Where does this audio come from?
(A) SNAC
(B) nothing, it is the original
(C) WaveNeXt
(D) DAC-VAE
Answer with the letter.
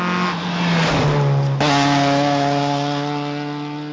B